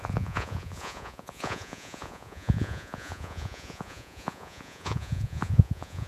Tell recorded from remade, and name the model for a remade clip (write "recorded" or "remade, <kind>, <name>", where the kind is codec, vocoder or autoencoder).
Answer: remade, vocoder, Vocos